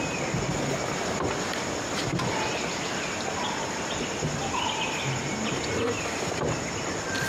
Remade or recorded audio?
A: recorded